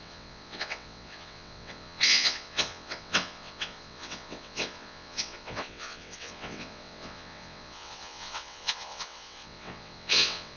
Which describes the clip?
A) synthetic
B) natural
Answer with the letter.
A